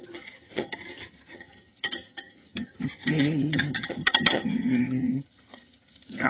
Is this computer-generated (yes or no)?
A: yes